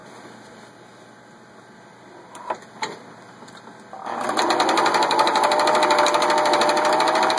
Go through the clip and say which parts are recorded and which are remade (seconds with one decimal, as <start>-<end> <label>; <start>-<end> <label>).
0.0-7.4 recorded

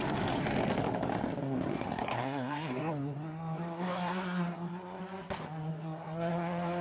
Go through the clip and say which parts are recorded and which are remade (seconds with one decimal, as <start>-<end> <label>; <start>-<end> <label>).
0.0-1.7 recorded; 1.7-5.0 remade; 5.0-5.7 recorded; 5.7-6.3 remade; 6.3-6.8 recorded